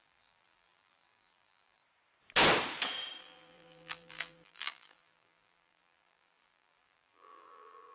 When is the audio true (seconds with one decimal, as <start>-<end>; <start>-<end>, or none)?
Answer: 1.8-3.2